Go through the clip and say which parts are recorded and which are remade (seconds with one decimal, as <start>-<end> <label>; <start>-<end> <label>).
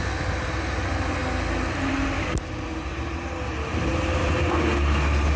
0.0-5.4 recorded